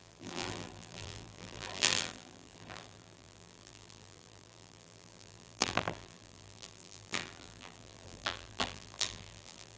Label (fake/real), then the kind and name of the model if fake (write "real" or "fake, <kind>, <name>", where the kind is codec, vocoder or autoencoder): fake, vocoder, BigVGAN v2